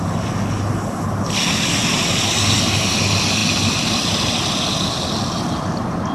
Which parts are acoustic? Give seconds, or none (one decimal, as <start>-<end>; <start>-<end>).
0.0-6.1